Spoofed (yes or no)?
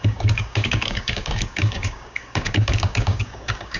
yes